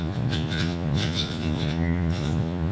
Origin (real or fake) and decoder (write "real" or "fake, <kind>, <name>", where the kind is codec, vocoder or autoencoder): fake, vocoder, Vocos